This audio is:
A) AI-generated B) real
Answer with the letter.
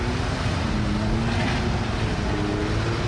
B